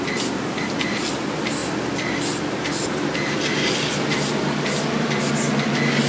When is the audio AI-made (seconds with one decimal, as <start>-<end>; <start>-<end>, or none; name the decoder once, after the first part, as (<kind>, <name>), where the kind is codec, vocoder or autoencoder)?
none